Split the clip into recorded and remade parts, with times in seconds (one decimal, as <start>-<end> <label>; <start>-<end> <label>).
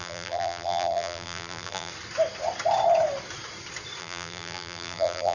0.0-1.9 remade; 1.9-4.0 recorded; 4.0-5.3 remade